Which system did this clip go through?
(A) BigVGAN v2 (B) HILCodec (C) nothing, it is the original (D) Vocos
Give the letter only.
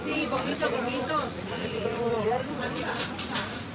D